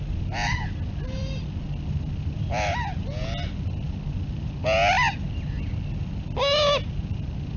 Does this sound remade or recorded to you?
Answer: recorded